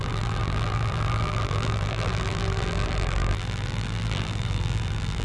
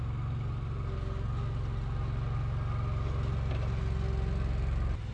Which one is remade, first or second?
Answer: first